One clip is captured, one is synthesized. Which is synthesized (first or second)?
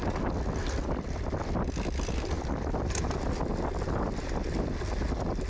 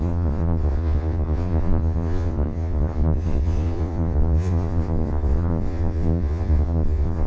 second